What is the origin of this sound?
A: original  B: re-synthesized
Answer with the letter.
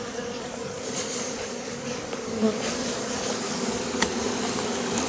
B